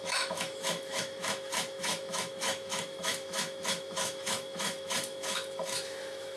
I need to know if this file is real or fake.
fake